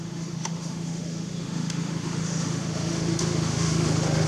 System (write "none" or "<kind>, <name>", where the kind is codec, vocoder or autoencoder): autoencoder, DAC-VAE